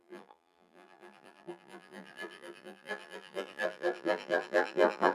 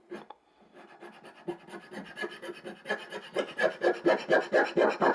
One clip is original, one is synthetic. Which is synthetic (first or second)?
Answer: first